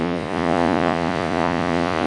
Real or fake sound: fake